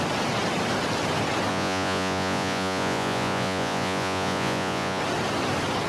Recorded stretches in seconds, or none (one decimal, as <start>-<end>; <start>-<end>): 0.0-1.5; 5.0-5.9